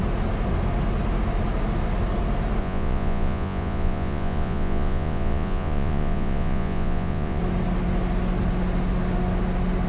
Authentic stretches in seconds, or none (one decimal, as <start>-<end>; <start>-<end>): 0.0-2.6; 7.4-9.9